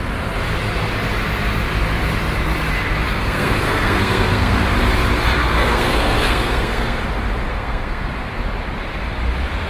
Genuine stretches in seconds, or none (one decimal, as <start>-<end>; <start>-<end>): 0.0-3.1; 4.6-5.4; 7.0-7.5; 8.1-9.7